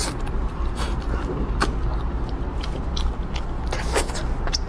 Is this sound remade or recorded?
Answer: recorded